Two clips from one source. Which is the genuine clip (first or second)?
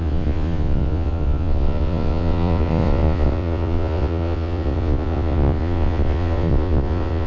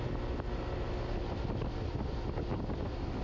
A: second